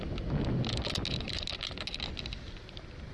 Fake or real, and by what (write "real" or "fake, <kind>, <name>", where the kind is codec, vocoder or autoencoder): real